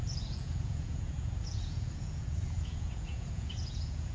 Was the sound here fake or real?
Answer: fake